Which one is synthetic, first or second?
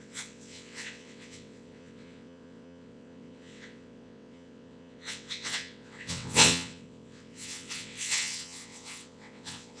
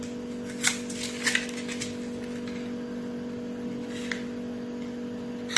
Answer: first